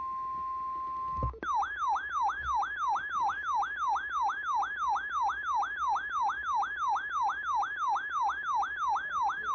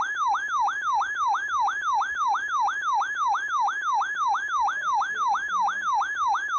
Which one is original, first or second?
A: first